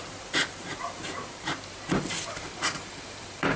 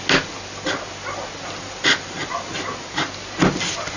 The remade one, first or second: first